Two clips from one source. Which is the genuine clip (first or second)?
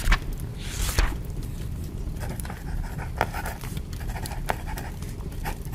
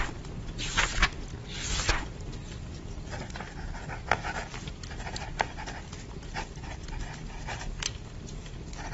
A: second